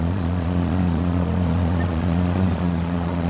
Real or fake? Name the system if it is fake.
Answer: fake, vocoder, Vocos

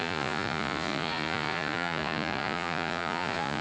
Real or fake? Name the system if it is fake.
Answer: fake, vocoder, Vocos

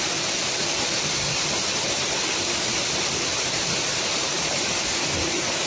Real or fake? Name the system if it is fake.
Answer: real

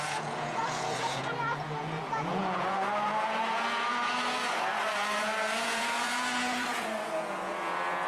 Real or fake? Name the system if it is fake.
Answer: fake, vocoder, Vocos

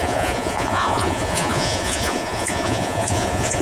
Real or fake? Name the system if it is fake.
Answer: fake, vocoder, Vocos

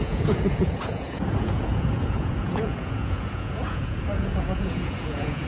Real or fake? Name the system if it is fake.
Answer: fake, vocoder, Vocos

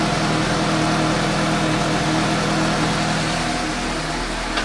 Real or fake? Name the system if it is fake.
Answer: real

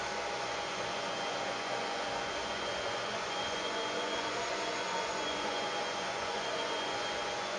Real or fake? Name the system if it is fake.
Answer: fake, vocoder, Vocos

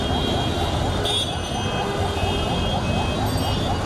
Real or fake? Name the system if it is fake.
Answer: real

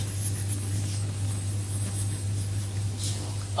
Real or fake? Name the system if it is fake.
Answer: real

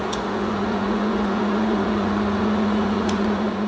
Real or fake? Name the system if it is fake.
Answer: fake, vocoder, Vocos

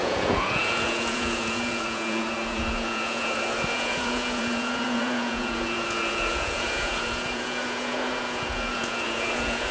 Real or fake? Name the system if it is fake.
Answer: fake, vocoder, Vocos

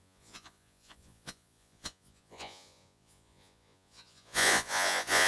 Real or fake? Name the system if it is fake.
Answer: fake, vocoder, Vocos